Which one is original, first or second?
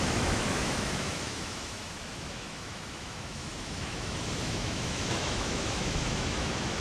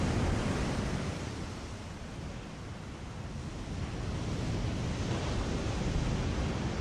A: second